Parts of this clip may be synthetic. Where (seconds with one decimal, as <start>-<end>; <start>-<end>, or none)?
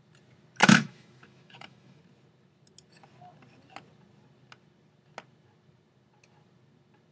0.6-2.0